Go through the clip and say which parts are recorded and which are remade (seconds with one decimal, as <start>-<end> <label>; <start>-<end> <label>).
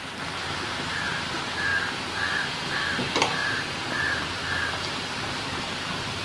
0.0-1.0 recorded; 1.0-1.7 remade; 1.7-2.7 recorded; 2.7-6.2 remade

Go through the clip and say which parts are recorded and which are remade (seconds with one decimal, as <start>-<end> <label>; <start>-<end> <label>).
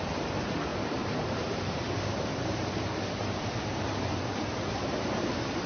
0.0-0.7 recorded; 0.7-2.7 remade; 2.7-3.2 recorded; 3.2-5.2 remade; 5.2-5.7 recorded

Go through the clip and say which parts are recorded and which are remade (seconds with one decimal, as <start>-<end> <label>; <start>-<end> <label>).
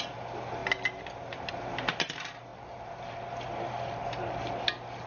0.0-5.1 recorded